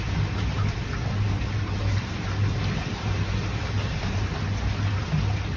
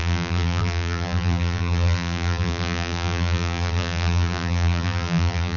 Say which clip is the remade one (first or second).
second